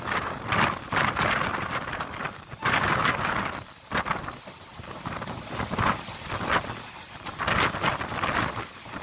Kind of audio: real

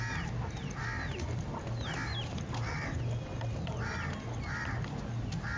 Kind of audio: real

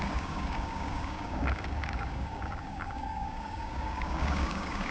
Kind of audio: fake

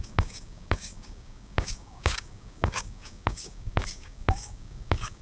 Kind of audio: fake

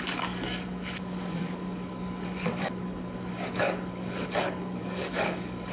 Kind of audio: fake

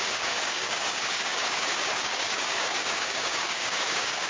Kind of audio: fake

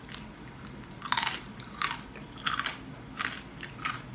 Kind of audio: real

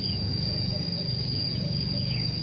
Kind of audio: fake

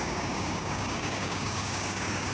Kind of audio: fake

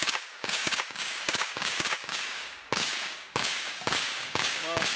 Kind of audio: fake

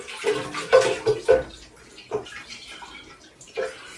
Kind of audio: real